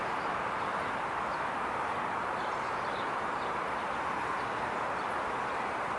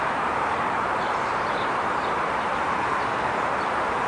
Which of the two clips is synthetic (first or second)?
second